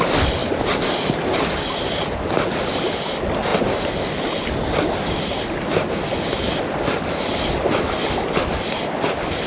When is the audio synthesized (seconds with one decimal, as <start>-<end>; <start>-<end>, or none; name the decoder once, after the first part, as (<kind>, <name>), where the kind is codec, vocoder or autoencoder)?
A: none